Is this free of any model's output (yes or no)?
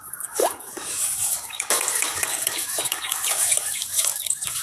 no